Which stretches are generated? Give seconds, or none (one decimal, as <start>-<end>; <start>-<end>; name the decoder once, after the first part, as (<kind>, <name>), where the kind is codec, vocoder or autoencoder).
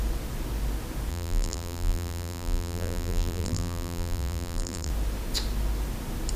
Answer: 1.1-4.9 (vocoder, BigVGAN v2)